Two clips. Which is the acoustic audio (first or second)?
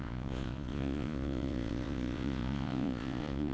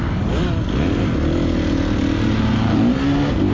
second